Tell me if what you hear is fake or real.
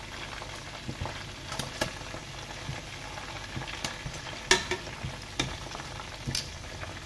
real